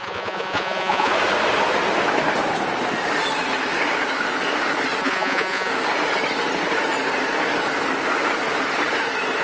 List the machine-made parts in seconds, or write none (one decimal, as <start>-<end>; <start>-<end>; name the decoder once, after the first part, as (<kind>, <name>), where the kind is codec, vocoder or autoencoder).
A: 0.0-1.1 (vocoder, Vocos); 5.0-5.7